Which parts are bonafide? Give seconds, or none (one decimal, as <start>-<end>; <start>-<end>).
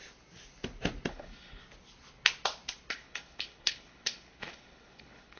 0.0-1.1; 1.6-2.9